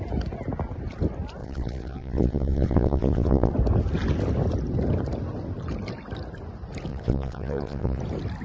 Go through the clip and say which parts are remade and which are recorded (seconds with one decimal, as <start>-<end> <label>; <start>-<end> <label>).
0.0-1.4 recorded; 1.4-3.5 remade; 3.5-6.9 recorded; 6.9-8.0 remade; 8.0-8.4 recorded